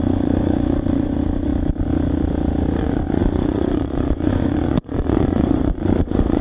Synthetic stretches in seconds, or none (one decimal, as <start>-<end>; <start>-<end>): 0.0-1.5; 2.8-6.4